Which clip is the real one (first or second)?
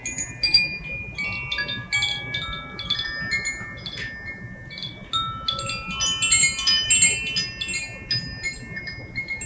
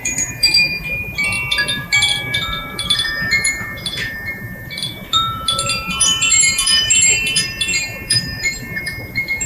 first